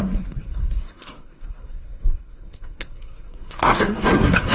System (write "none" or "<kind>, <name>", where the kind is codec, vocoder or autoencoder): codec, SNAC